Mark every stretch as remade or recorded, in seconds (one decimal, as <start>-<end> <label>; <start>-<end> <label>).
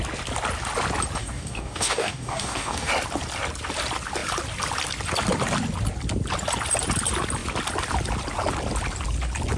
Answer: 0.0-1.2 recorded; 1.2-2.9 remade; 2.9-9.6 recorded